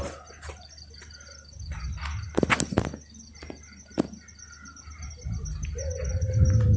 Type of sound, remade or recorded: recorded